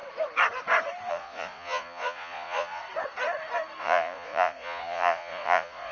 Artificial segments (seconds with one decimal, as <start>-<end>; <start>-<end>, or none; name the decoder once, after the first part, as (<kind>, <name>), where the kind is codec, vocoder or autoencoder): 1.1-2.8 (vocoder, Vocos); 3.8-5.9